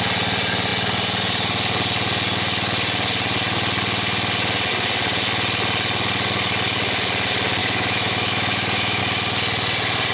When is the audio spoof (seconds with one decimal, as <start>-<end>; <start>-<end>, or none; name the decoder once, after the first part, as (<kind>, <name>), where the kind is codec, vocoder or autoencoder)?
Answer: 7.6-9.0 (autoencoder, DAC-VAE)